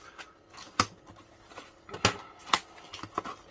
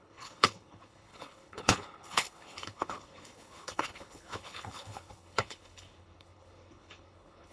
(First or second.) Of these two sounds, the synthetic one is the second